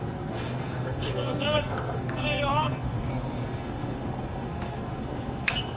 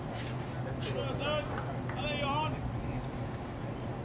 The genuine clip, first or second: second